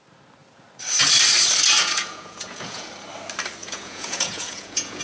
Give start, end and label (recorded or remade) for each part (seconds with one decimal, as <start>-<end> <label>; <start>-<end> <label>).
0.0-1.8 recorded; 1.8-2.9 remade; 2.9-3.6 recorded; 3.6-5.0 remade